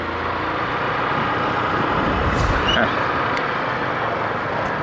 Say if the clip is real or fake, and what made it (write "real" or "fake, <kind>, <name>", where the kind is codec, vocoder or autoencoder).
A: real